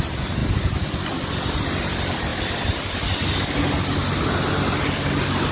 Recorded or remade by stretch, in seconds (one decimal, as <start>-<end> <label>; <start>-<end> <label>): 0.0-0.4 recorded; 0.4-1.3 remade; 1.3-5.5 recorded